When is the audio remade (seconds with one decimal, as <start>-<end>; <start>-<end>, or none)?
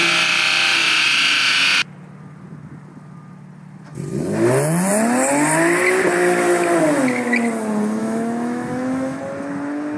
8.0-9.2